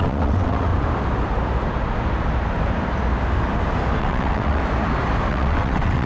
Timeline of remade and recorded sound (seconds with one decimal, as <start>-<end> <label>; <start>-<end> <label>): 0.0-0.7 remade; 0.7-4.0 recorded; 4.0-4.6 remade; 4.6-5.3 recorded; 5.3-6.1 remade